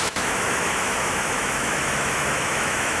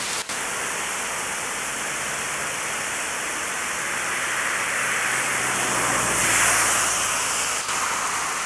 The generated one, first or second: first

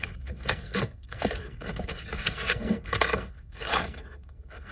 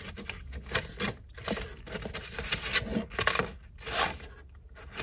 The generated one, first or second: first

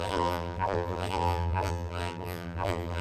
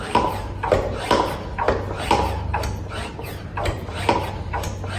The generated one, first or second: first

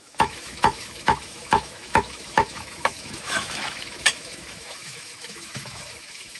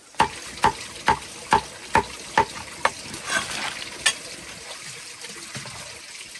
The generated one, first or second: first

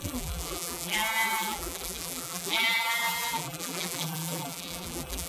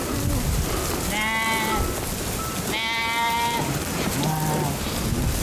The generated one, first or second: first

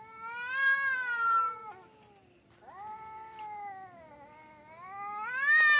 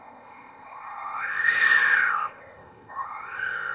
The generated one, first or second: second